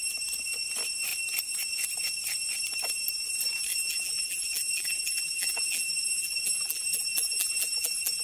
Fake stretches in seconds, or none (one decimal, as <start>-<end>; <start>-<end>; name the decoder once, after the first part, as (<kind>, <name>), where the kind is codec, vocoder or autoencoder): 3.7-8.2 (vocoder, BigVGAN v2)